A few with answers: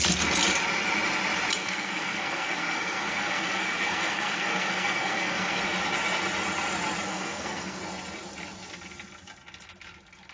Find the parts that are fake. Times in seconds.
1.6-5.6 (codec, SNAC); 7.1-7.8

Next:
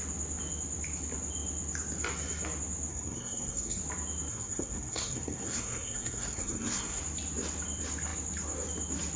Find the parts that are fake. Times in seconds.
2.9-3.8 (codec, SNAC); 4.3-7.0